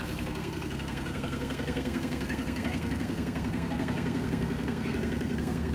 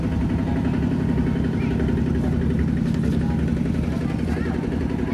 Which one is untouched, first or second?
second